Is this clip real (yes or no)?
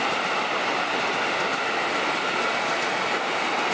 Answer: yes